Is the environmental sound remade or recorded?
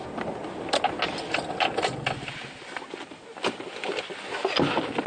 recorded